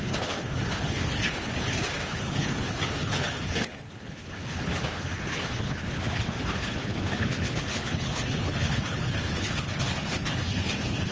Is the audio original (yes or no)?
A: no